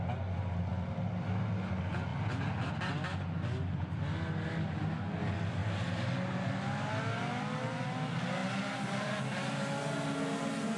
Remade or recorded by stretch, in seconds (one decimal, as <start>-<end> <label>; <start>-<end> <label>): 0.0-10.8 recorded